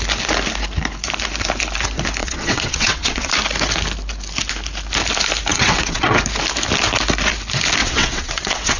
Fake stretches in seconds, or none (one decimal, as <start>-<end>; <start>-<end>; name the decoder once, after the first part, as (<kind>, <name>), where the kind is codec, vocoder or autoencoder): 2.2-3.3 (vocoder, WaveNeXt); 5.5-6.2; 7.8-8.8